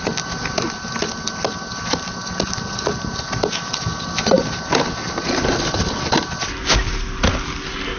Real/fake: real